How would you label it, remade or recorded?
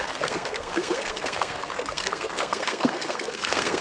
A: remade